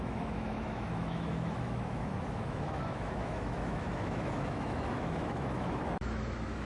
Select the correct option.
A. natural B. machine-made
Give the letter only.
B